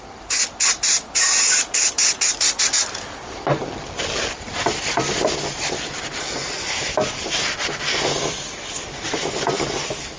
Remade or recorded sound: recorded